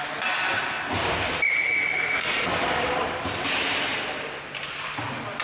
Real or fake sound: real